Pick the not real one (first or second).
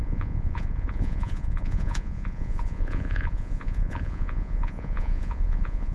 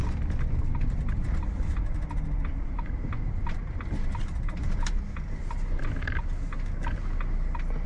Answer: first